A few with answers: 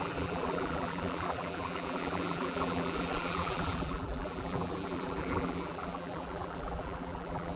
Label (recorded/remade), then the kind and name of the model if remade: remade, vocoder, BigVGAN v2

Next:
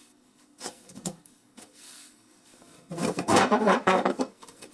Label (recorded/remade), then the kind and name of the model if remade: remade, codec, SNAC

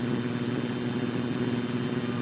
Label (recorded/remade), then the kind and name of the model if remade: recorded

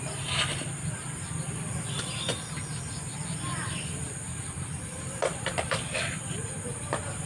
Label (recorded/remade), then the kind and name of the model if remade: recorded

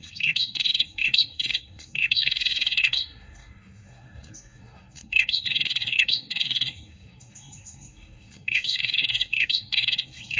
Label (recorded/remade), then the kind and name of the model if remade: remade, codec, SNAC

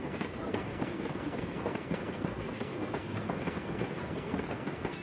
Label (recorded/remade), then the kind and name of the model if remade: remade, codec, SNAC